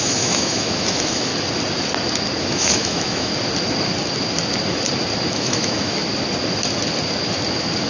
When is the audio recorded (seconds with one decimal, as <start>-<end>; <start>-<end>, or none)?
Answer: 1.3-2.4; 3.3-5.3; 6.0-7.9